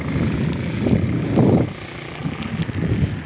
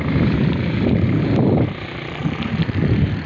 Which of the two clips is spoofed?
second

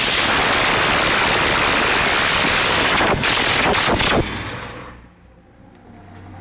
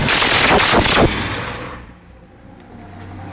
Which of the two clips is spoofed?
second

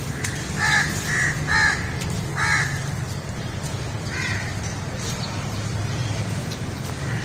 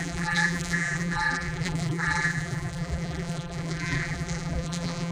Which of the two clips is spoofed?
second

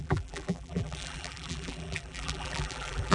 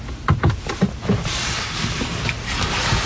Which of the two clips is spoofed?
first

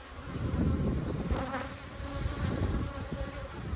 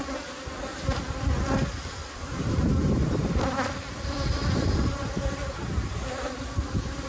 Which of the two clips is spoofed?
second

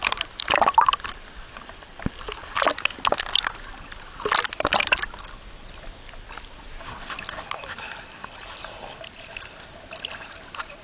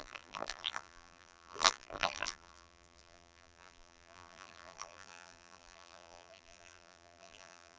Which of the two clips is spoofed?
second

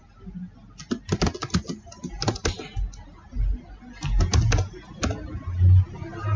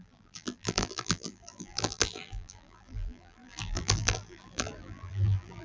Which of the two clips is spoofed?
second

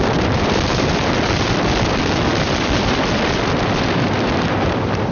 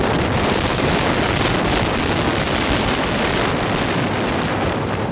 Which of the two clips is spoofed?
first